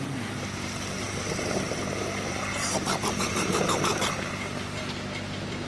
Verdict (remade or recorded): remade